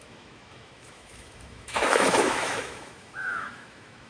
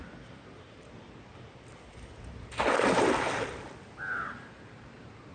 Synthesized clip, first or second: first